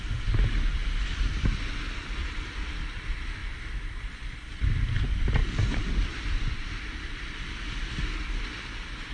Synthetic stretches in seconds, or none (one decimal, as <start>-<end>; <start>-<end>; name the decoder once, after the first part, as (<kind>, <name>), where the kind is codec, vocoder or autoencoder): 0.8-3.0 (vocoder, BigVGAN v2); 3.4-5.0; 5.4-7.5